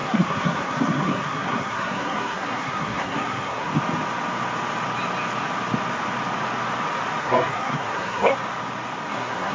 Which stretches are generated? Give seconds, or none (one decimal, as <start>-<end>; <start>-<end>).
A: 0.0-3.7; 7.2-8.3; 9.1-9.5